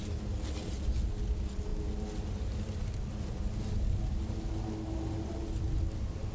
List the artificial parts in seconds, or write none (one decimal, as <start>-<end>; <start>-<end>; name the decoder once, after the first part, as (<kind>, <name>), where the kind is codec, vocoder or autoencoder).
none